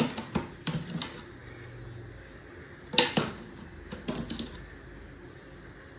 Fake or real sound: real